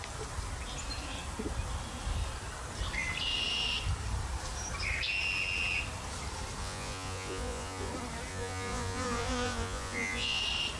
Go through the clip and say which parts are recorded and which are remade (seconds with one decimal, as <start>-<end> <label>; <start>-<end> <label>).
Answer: 0.0-6.6 recorded; 6.6-7.9 remade; 7.9-8.3 recorded; 8.3-10.4 remade; 10.4-10.8 recorded